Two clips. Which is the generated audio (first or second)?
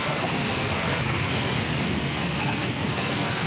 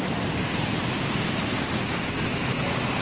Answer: first